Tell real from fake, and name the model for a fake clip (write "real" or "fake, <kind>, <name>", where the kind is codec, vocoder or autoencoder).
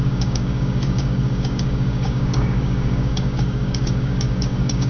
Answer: fake, codec, DAC